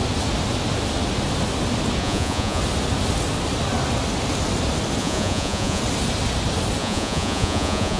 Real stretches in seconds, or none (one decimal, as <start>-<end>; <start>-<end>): 0.0-2.0; 2.6-5.0; 5.8-6.8